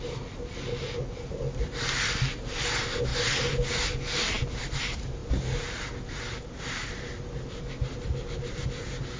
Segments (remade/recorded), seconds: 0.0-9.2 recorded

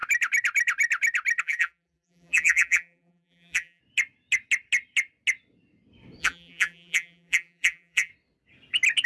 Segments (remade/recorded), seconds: 0.0-1.4 recorded; 1.4-3.8 remade; 3.8-6.2 recorded; 6.2-8.1 remade; 8.1-9.1 recorded